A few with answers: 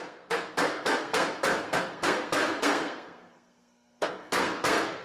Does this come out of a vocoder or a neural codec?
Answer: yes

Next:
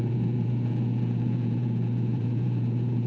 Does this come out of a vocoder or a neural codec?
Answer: yes